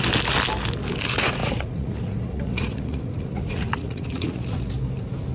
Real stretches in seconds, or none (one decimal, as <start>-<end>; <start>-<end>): 0.0-1.4; 4.6-5.3